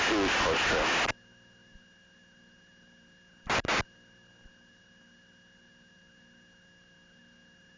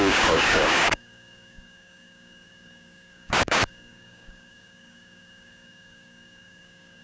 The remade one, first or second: second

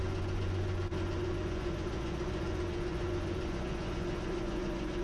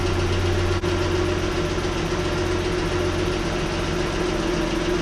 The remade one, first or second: first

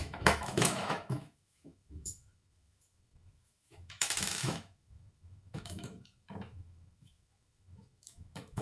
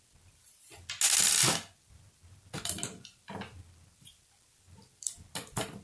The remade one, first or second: first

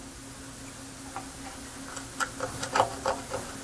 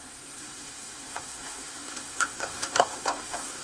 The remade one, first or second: second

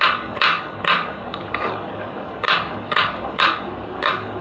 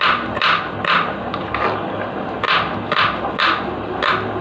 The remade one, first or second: first